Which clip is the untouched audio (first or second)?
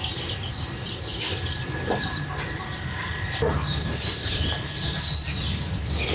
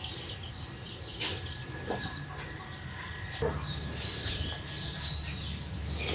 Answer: second